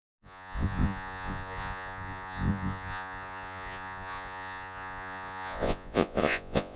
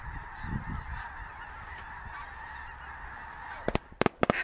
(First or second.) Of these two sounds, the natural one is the second